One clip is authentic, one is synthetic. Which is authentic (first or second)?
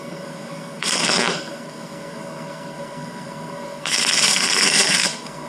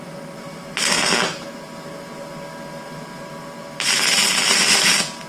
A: second